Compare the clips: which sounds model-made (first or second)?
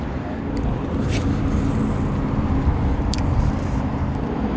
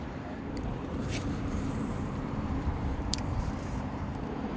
second